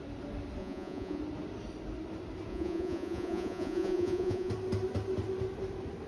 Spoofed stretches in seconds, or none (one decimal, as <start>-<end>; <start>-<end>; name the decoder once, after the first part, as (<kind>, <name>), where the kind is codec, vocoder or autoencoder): 0.6-1.2 (vocoder, Vocos); 2.5-4.5

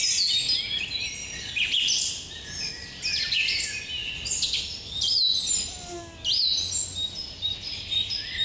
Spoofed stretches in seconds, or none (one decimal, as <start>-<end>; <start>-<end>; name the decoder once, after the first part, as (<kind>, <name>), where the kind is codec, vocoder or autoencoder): none

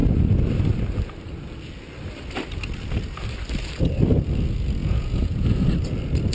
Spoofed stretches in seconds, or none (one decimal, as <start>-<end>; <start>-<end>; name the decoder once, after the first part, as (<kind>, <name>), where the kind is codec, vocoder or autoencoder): 4.8-5.7 (vocoder, Vocos)